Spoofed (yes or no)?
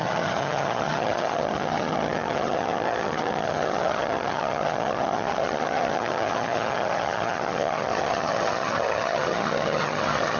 yes